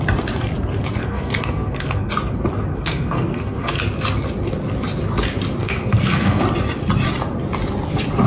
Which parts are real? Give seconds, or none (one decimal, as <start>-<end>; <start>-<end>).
0.0-1.0; 2.1-2.7; 3.8-5.6; 6.4-8.3